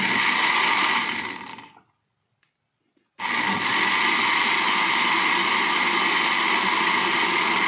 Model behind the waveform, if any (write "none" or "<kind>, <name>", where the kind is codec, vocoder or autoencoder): none